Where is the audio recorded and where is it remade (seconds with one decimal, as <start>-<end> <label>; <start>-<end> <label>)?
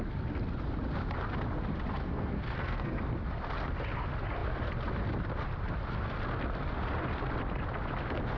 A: 0.0-2.0 recorded; 2.0-3.0 remade; 3.0-8.4 recorded